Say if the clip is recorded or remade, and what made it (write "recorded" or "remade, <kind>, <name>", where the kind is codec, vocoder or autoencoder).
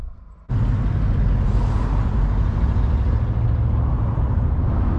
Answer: recorded